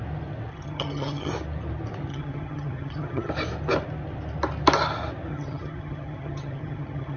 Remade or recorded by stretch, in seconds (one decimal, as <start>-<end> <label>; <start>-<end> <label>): 0.0-0.5 recorded; 0.5-1.3 remade; 1.3-2.1 recorded; 2.1-3.3 remade; 3.3-5.3 recorded; 5.3-7.2 remade